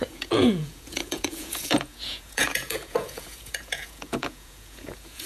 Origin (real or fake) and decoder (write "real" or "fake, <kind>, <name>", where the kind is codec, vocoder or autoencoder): fake, vocoder, Vocos